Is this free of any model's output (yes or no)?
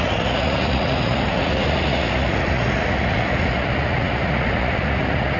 no